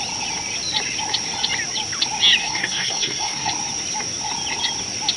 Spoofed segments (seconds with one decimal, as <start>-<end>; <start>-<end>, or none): 2.4-3.5